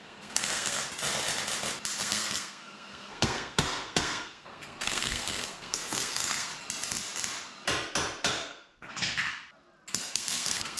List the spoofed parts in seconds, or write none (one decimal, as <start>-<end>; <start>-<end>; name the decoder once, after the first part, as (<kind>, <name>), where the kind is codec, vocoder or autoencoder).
0.0-0.8 (codec, SNAC); 2.0-6.5; 8.3-9.3; 9.9-10.8